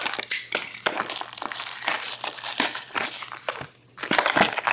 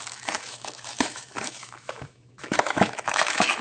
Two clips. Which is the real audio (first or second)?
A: first